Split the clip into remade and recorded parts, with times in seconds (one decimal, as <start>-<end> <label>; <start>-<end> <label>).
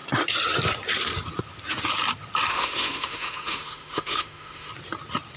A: 0.0-2.5 recorded; 2.5-4.7 remade; 4.7-5.4 recorded